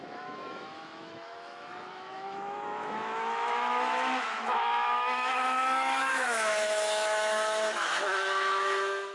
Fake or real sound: fake